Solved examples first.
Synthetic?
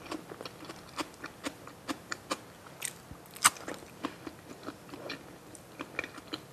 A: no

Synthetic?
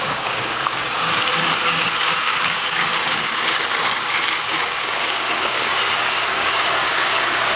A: yes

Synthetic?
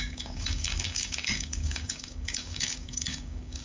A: yes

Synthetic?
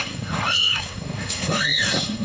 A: yes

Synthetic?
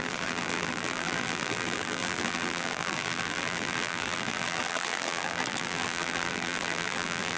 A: yes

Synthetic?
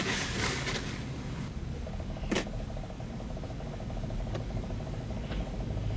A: yes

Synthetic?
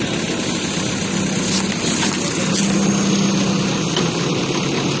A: no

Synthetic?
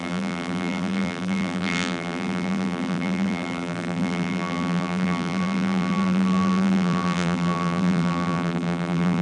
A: yes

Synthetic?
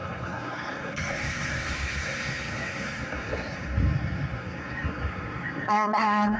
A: yes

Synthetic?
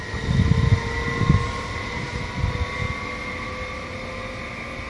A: no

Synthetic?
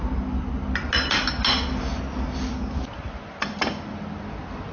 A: no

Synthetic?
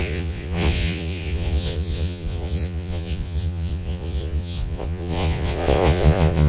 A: yes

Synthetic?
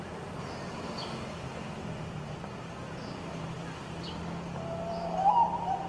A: no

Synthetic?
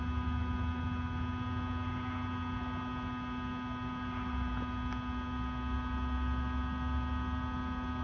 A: no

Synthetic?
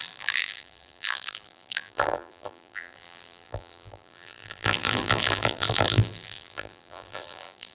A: yes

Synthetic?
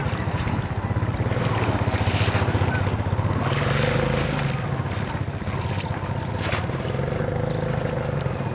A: no